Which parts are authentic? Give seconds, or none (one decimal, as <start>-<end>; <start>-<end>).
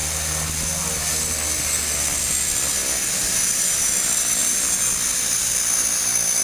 0.0-6.4